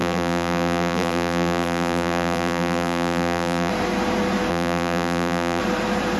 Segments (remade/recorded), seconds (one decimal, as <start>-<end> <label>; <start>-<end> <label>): 0.0-3.7 remade; 3.7-4.5 recorded; 4.5-5.6 remade; 5.6-6.2 recorded